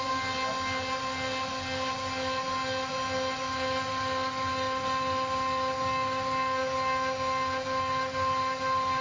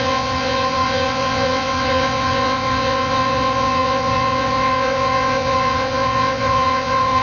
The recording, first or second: first